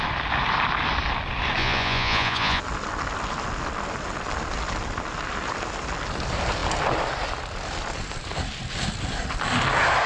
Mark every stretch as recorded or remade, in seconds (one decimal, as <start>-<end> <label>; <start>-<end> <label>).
0.0-1.6 recorded; 1.6-2.6 remade; 2.6-10.1 recorded